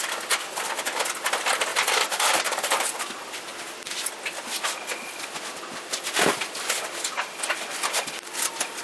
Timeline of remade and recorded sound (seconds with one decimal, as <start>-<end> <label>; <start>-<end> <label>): 0.0-1.7 recorded; 1.7-3.0 remade; 3.0-8.8 recorded